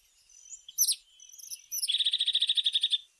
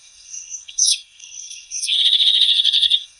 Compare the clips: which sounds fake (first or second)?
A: second